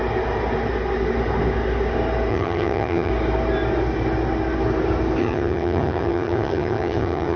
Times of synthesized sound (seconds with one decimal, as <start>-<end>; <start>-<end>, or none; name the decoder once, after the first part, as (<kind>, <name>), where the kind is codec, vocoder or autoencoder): 2.3-3.1 (vocoder, HiFi-GAN); 5.2-7.4